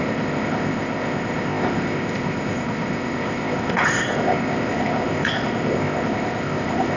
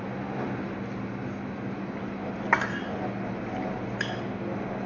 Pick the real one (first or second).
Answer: second